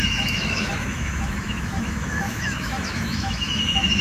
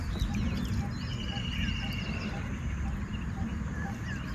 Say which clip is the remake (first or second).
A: first